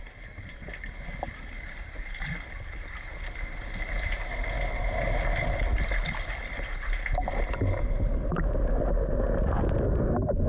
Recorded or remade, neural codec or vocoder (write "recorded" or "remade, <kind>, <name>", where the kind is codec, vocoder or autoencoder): recorded